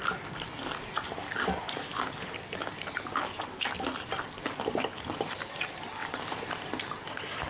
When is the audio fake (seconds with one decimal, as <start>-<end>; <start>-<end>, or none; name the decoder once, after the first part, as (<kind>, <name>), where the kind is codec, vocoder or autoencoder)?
6.0-6.8 (vocoder, BigVGAN v2)